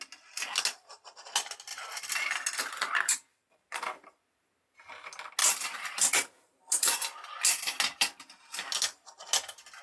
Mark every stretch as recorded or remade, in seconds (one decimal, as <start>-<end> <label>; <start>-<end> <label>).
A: 0.0-3.3 recorded; 3.3-4.1 remade; 4.1-5.4 recorded; 5.4-7.0 remade; 7.0-9.8 recorded